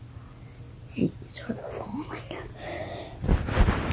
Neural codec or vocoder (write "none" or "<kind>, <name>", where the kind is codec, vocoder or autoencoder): none